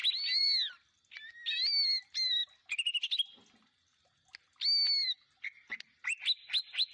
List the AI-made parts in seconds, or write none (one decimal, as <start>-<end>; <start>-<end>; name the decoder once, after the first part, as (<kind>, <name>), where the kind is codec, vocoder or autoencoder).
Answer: none